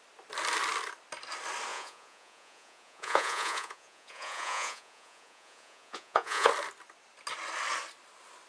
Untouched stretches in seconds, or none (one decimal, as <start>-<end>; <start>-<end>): 0.0-1.7; 6.5-8.5